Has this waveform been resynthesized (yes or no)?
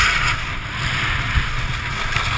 no